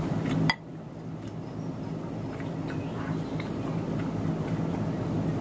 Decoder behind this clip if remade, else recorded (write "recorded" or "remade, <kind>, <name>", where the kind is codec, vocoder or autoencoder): recorded